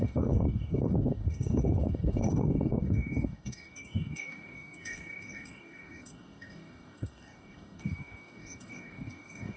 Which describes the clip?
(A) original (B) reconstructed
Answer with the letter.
B